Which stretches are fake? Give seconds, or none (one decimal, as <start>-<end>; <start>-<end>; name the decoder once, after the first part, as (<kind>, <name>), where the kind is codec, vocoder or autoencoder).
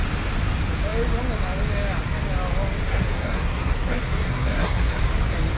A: 2.8-5.0 (codec, SNAC)